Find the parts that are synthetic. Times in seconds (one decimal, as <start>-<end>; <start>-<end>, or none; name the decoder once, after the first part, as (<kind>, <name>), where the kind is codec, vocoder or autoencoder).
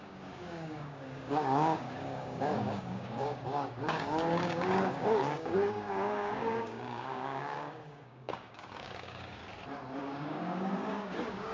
0.0-9.4 (codec, DAC); 10.0-11.5